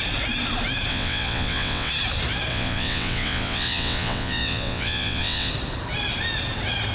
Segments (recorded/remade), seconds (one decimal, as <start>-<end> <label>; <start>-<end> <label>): 0.0-0.9 recorded; 0.9-1.9 remade; 1.9-2.5 recorded; 2.5-5.5 remade; 5.5-6.9 recorded